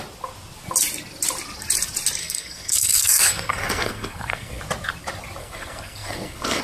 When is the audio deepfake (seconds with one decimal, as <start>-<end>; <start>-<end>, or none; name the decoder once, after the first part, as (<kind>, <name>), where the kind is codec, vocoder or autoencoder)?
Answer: 2.2-4.6 (codec, SNAC); 5.4-6.6